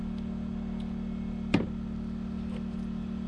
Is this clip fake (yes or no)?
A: no